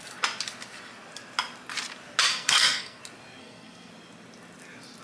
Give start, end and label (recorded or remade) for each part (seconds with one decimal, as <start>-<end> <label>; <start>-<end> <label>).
0.0-2.3 recorded; 2.3-3.0 remade; 3.0-3.4 recorded; 3.4-3.9 remade; 3.9-5.0 recorded